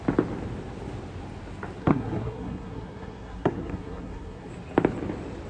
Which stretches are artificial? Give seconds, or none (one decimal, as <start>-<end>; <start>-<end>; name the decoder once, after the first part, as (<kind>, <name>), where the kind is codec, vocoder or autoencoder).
1.8-4.5 (codec, SNAC)